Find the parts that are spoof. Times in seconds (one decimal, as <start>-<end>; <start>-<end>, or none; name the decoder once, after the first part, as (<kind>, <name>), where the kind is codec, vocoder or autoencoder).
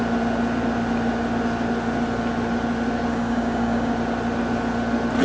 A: 3.1-3.9 (codec, DAC)